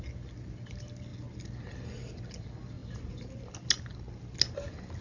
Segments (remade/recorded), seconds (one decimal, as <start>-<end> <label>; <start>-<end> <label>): 0.0-5.0 recorded